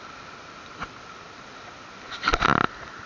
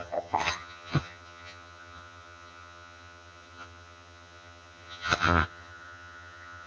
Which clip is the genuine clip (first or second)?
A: first